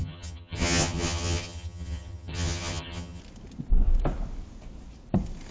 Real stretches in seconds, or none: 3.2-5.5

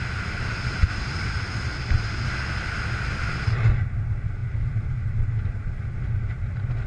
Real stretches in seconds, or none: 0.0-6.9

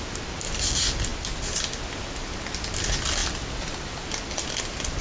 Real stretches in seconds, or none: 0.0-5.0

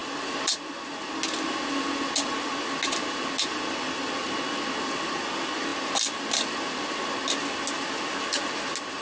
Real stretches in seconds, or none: 0.0-9.0

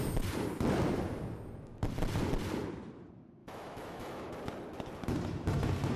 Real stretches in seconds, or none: 0.0-3.4; 4.3-6.0

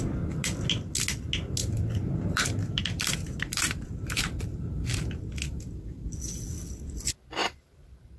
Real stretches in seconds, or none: 0.0-1.6; 5.1-7.4

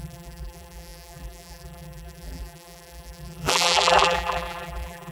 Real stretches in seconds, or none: none

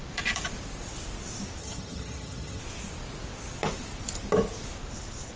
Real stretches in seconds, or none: 0.0-1.6; 2.6-5.4